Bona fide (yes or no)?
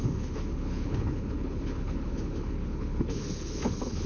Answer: no